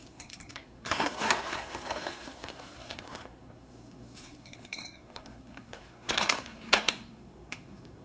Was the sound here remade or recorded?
remade